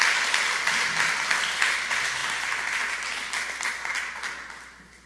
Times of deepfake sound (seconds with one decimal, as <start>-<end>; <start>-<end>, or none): none